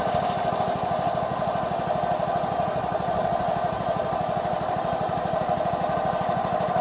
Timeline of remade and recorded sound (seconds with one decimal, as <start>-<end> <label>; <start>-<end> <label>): 0.0-6.8 recorded